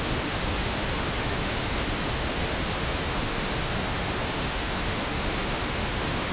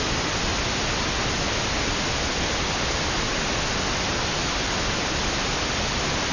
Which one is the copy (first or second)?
first